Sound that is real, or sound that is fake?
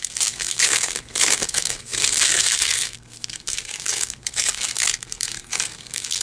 fake